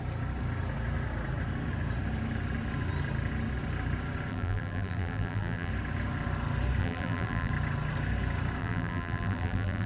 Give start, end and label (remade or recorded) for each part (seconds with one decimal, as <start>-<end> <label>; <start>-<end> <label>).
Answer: 0.0-4.3 recorded; 4.3-5.7 remade; 5.7-6.8 recorded; 6.8-7.5 remade; 7.5-8.6 recorded; 8.6-9.9 remade